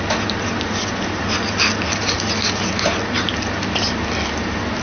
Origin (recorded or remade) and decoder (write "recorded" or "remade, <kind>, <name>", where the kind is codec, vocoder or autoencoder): recorded